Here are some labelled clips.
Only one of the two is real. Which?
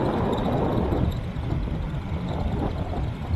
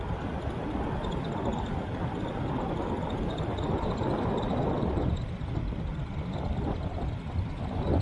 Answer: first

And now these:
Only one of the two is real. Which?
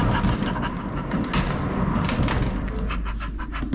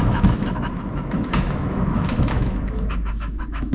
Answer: first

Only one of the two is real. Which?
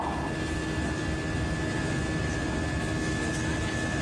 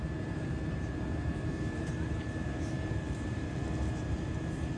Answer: first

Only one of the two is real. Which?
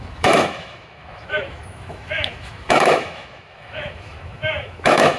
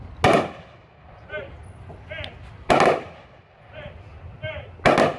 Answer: second